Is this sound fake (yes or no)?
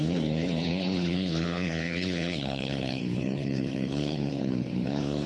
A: yes